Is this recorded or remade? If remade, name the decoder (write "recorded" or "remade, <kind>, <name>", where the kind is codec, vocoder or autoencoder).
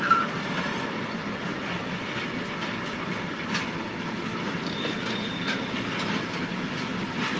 recorded